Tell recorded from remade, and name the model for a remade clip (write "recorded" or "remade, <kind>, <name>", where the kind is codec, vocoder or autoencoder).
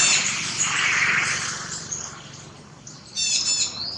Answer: recorded